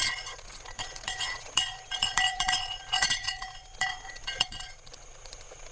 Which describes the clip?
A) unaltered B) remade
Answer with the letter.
B